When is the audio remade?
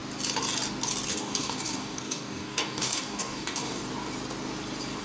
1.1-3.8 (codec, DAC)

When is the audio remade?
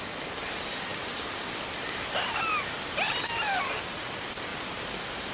none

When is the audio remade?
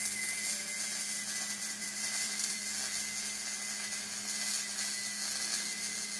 1.6-2.6 (vocoder, BigVGAN v2)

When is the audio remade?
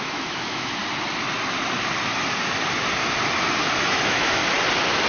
0.0-0.8 (autoencoder, DAC-VAE); 3.9-4.4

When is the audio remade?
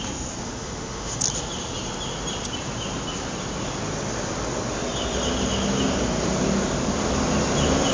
0.4-1.2 (autoencoder, DAC-VAE)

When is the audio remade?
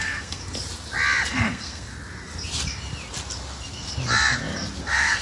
0.0-0.4 (codec, SNAC); 1.3-1.9; 4.8-5.2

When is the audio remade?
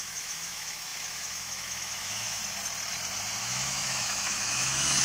0.0-2.4 (autoencoder, DAC-VAE); 3.4-5.0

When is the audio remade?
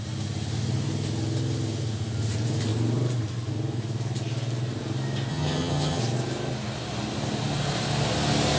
5.3-6.0 (vocoder, HiFi-GAN)